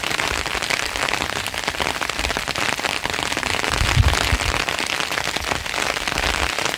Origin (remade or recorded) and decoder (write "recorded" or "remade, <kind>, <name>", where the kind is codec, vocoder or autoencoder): remade, vocoder, BigVGAN v2